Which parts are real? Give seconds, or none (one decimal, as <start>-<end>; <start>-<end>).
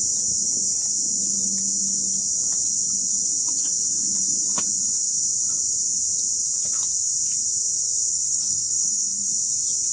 0.0-8.1; 9.3-9.9